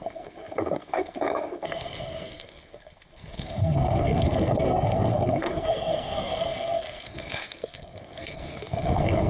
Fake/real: fake